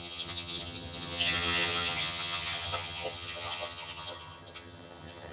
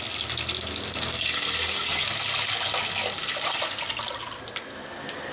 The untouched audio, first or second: second